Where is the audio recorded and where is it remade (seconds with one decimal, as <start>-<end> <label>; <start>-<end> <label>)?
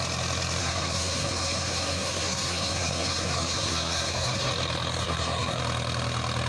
0.0-0.6 recorded; 0.6-4.5 remade; 4.5-5.0 recorded; 5.0-5.6 remade; 5.6-6.5 recorded